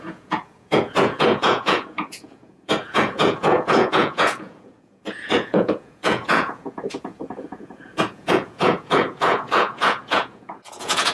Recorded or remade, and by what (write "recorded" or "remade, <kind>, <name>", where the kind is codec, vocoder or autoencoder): remade, vocoder, Vocos